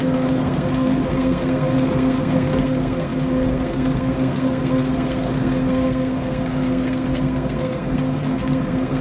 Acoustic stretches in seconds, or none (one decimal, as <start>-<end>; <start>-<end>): none